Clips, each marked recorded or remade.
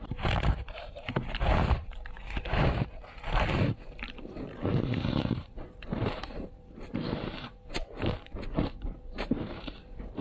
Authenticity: remade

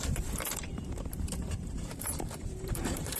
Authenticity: remade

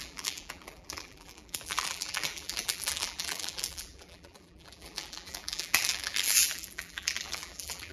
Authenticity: remade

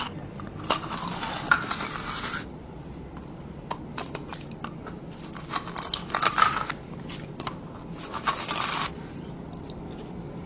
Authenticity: recorded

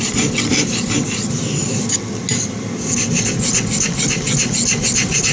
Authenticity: recorded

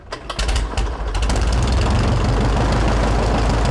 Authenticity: recorded